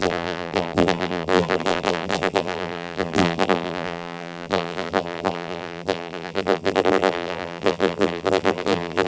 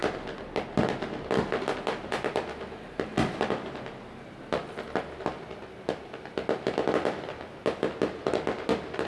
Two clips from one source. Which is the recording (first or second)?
second